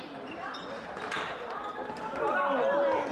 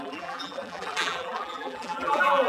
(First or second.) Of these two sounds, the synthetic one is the second